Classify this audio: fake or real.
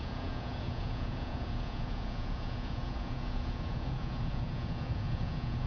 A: fake